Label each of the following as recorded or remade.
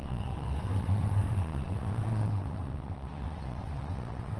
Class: remade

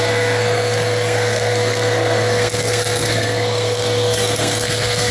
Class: remade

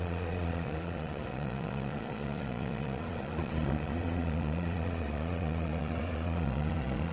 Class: remade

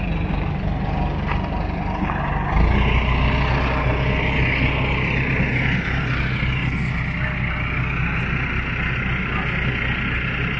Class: recorded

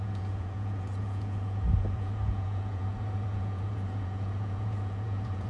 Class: remade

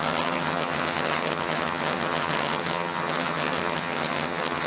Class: remade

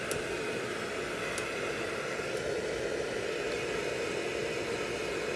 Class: recorded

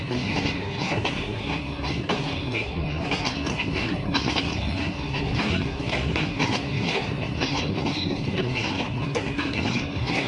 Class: remade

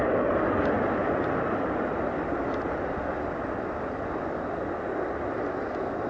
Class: recorded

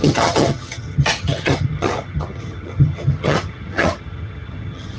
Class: remade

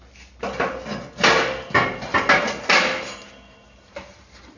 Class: recorded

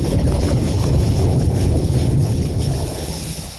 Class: remade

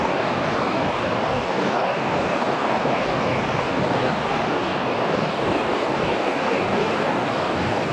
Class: remade